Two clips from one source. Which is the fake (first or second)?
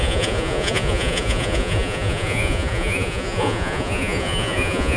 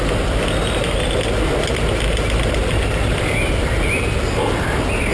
first